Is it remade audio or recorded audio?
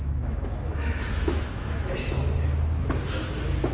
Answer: remade